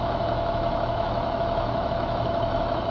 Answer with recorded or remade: remade